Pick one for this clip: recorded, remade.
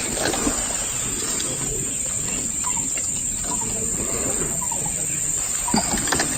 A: recorded